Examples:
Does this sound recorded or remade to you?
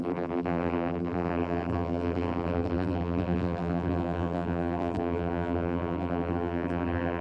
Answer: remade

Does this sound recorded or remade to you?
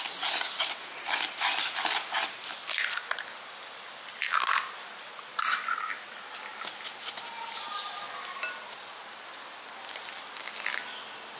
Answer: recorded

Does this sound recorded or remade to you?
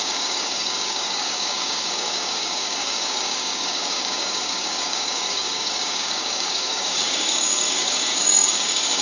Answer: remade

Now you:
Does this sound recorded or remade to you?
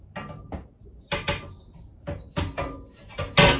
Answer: recorded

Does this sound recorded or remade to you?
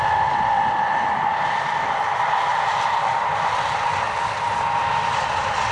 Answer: remade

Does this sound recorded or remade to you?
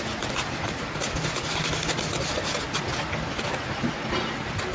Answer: recorded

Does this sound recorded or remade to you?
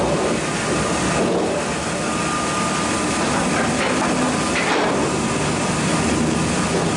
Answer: recorded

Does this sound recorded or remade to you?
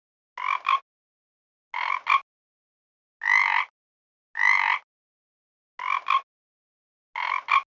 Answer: recorded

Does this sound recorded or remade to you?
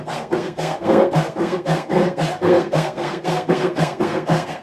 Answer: remade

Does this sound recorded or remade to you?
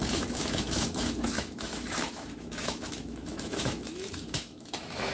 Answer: remade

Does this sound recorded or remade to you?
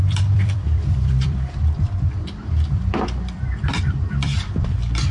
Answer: remade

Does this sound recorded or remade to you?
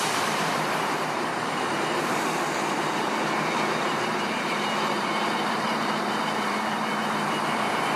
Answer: remade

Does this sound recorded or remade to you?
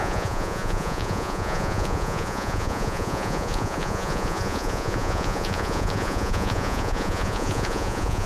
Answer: remade